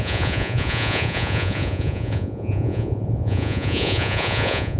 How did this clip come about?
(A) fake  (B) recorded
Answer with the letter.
A